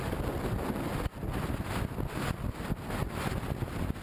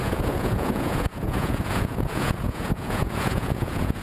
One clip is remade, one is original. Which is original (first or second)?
first